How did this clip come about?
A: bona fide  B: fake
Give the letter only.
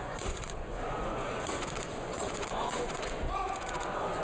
B